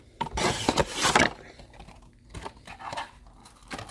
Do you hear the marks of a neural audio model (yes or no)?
no